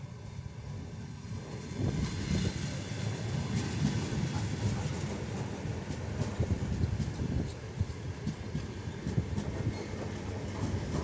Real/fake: real